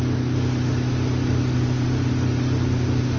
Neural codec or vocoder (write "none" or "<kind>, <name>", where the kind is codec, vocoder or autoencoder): none